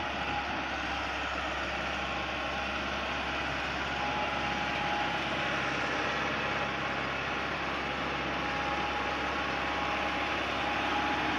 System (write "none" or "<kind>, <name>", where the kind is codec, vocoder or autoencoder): none